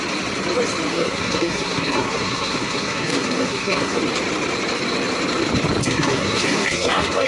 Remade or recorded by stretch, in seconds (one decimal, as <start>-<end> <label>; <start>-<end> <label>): 0.0-0.9 recorded; 0.9-4.0 remade; 4.0-5.8 recorded; 5.8-7.3 remade